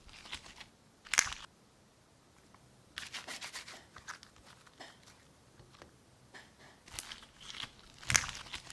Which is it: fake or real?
real